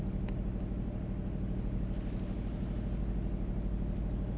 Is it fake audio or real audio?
real